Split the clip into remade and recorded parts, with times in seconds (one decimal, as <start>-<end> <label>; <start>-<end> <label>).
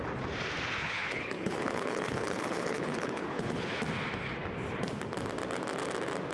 0.0-0.8 recorded; 0.8-3.8 remade; 3.8-6.3 recorded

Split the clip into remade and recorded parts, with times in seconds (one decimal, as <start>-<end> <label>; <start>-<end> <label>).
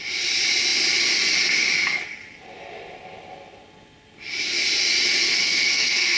0.0-5.4 recorded; 5.4-6.2 remade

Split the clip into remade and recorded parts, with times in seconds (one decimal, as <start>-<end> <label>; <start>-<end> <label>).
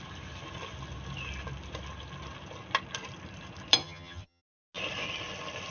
0.0-3.8 recorded; 3.8-4.4 remade; 4.4-5.7 recorded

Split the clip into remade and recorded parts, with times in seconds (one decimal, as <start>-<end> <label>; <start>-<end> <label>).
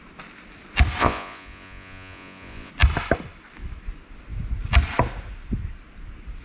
0.0-1.0 recorded; 1.0-2.7 remade; 2.7-6.4 recorded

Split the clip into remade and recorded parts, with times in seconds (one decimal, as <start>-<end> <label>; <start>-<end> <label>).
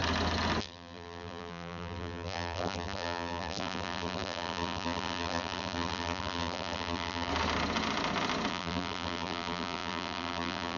0.0-0.6 recorded; 0.6-7.3 remade; 7.3-8.5 recorded; 8.5-10.8 remade